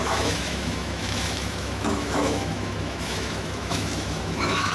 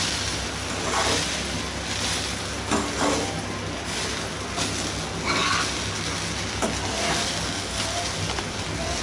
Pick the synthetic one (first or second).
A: first